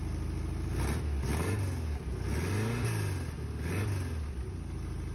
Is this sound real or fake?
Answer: real